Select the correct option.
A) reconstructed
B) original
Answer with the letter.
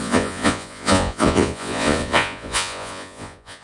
A